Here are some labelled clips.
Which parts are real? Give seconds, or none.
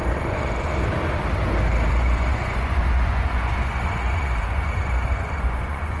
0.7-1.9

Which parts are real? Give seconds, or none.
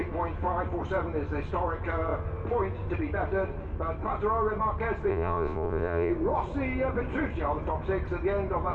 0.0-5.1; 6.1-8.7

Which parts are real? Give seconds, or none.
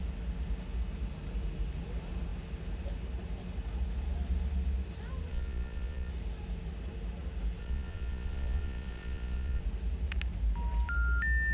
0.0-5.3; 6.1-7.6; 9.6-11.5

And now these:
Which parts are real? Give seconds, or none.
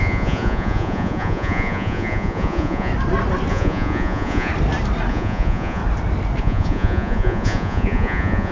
2.9-3.5; 4.5-5.1; 5.8-6.4